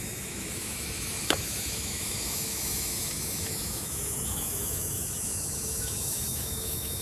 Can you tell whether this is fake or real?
fake